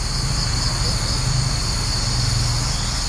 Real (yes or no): yes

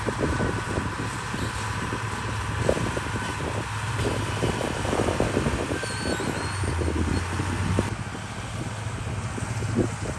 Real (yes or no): yes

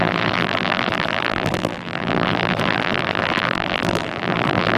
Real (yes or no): no